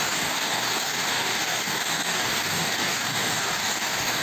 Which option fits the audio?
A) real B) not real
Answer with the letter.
B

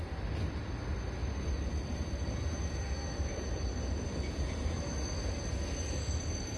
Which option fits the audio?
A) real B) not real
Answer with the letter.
A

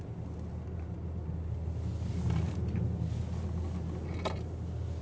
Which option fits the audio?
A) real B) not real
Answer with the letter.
A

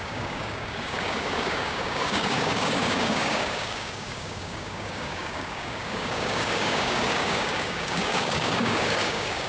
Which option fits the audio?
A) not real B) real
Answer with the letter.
A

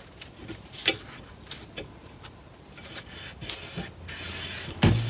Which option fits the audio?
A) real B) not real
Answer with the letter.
A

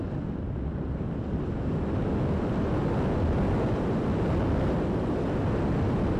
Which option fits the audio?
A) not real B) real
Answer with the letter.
B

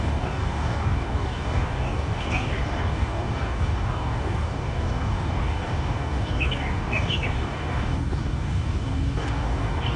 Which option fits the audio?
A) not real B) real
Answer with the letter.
A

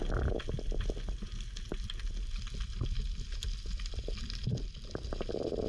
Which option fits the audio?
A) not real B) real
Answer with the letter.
B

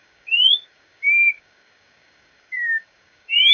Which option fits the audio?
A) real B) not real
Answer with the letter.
B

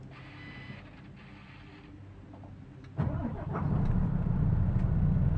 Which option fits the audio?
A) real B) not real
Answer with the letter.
A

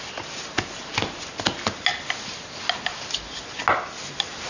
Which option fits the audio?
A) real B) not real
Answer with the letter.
A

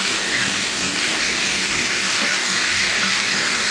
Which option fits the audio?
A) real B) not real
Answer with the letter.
B